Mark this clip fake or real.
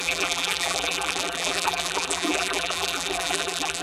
fake